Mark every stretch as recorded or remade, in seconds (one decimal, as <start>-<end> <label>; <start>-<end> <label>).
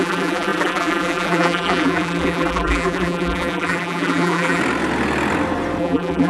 0.0-4.6 remade; 4.6-5.8 recorded; 5.8-6.3 remade